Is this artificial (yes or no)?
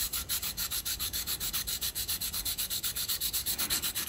yes